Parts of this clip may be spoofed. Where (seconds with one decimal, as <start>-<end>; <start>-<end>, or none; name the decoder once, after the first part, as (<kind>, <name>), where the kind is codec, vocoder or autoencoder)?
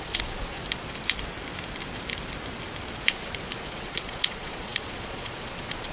0.0-0.6 (vocoder, Vocos); 3.1-5.9